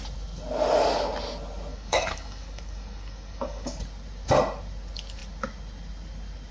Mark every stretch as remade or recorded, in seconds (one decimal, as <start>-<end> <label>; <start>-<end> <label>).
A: 0.0-1.7 recorded; 1.7-3.8 remade; 3.8-6.5 recorded